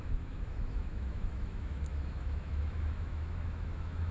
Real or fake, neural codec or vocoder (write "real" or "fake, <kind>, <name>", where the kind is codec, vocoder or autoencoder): fake, autoencoder, DAC-VAE